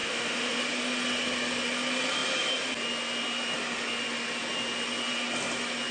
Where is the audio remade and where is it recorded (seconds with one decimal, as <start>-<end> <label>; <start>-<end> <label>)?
0.0-0.6 remade; 0.6-5.9 recorded